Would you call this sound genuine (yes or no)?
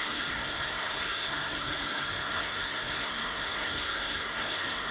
no